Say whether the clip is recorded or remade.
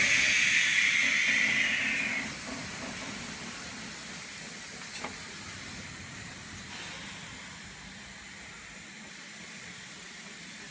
recorded